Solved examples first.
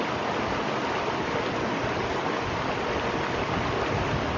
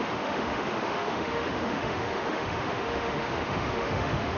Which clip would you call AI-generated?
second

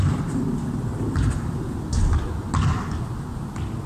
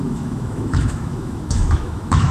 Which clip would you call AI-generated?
second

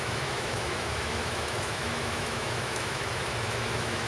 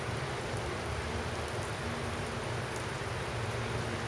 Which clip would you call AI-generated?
first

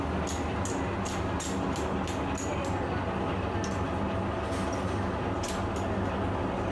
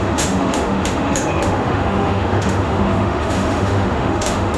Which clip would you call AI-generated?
second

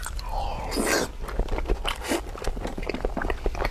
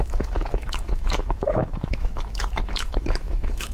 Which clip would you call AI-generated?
second